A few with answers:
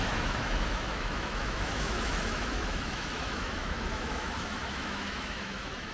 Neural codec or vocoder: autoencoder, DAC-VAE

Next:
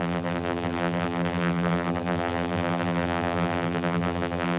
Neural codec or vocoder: vocoder, BigVGAN v2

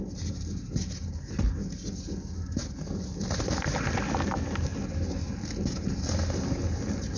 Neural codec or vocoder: none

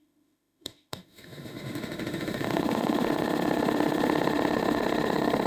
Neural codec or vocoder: autoencoder, DAC-VAE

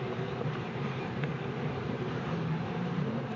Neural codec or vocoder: vocoder, BigVGAN v2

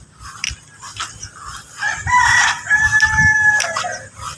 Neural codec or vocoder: none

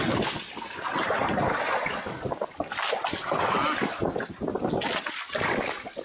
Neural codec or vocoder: none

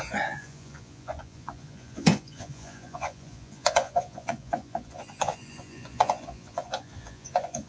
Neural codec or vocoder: vocoder, Vocos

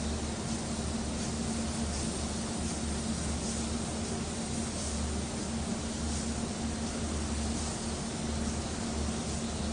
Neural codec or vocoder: none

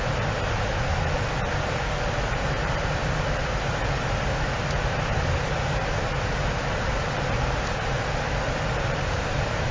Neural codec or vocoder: none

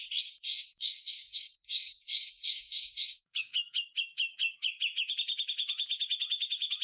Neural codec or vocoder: codec, DAC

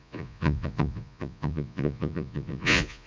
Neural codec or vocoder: vocoder, Vocos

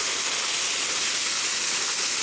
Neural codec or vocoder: none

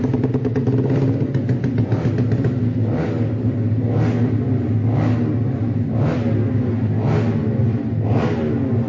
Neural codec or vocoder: none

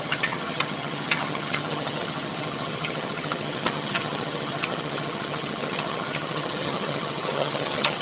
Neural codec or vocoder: vocoder, HiFi-GAN